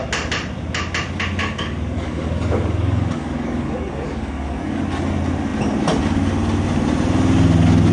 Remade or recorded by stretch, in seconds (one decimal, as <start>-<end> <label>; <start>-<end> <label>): 0.0-1.4 recorded; 1.4-4.8 remade; 4.8-7.9 recorded